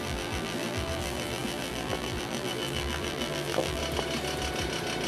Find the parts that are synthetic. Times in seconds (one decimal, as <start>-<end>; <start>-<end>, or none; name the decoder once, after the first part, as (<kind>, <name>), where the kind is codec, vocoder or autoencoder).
0.0-3.8 (vocoder, BigVGAN v2)